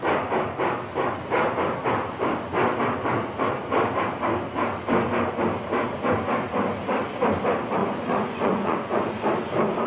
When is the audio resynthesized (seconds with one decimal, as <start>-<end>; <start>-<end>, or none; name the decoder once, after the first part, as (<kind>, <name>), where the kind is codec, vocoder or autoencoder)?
7.8-9.1 (vocoder, Vocos)